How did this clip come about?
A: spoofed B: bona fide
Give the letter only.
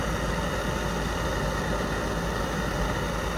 B